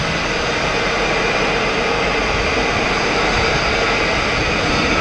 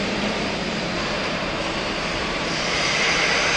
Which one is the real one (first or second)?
first